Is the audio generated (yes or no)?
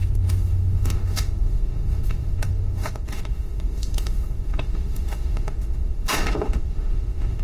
yes